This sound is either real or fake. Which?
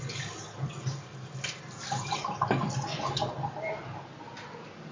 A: real